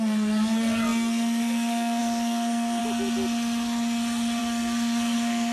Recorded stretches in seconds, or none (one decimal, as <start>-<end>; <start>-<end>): 2.8-4.4